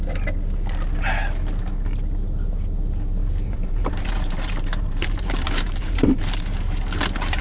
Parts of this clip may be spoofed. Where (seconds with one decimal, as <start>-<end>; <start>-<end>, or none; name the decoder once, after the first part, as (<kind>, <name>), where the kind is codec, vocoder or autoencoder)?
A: 3.2-6.4 (vocoder, BigVGAN v2)